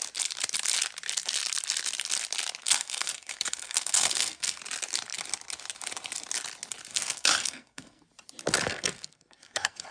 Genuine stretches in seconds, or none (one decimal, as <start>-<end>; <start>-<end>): 0.0-2.6; 4.6-6.9; 8.1-8.7